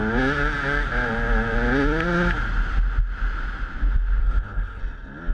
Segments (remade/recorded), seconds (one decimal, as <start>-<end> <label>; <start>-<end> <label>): 0.0-4.2 recorded; 4.2-4.8 remade; 4.8-5.3 recorded